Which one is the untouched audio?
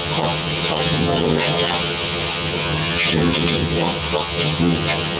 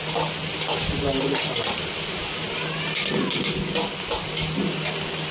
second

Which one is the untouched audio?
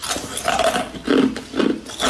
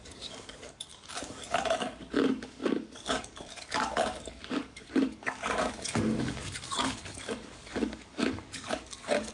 first